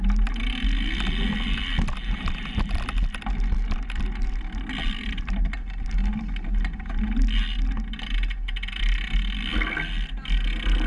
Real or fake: real